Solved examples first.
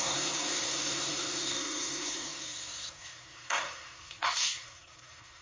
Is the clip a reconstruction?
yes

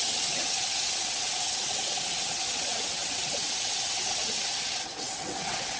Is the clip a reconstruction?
yes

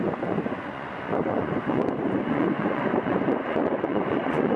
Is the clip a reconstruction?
yes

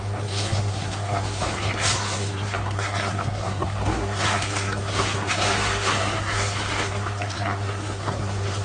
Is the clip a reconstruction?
yes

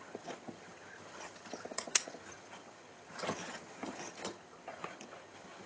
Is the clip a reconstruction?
yes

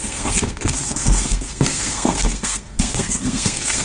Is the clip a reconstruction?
yes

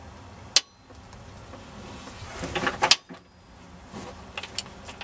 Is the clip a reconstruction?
no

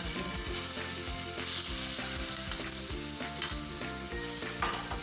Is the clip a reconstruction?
no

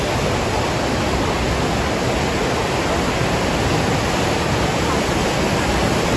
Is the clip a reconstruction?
no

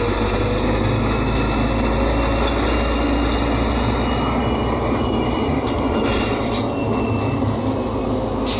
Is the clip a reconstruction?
no